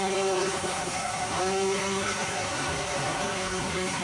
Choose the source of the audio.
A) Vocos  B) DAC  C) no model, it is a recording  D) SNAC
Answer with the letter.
D